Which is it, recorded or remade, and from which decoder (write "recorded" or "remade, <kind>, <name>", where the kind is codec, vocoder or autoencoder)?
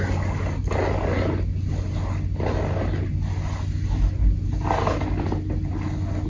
recorded